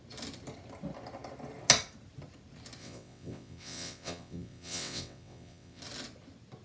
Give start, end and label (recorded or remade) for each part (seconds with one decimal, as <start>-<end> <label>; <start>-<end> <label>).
0.0-2.8 recorded; 2.8-5.8 remade; 5.8-6.6 recorded